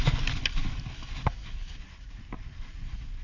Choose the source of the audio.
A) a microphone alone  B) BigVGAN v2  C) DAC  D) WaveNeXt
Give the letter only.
A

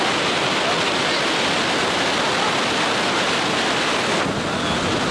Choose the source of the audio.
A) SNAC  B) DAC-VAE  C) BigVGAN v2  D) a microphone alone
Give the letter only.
D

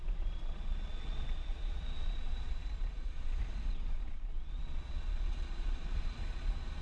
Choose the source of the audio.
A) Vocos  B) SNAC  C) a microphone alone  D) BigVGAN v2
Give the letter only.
A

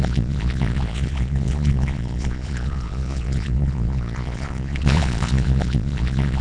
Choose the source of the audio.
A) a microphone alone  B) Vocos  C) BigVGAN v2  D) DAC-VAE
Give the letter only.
B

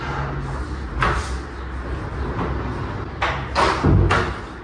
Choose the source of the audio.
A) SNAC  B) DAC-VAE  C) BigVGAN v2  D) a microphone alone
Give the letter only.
D